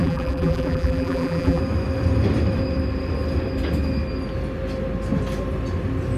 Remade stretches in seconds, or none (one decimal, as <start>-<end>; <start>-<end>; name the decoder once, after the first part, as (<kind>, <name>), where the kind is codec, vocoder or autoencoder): 0.0-1.6 (vocoder, BigVGAN v2)